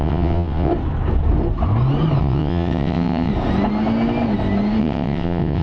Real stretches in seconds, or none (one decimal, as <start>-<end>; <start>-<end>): 0.7-2.2; 3.3-4.8